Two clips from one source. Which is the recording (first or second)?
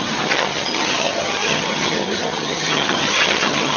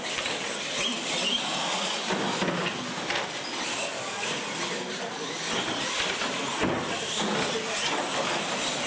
second